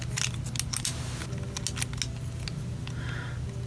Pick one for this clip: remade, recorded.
recorded